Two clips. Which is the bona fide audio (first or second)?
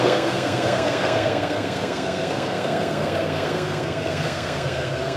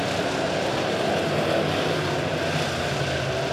second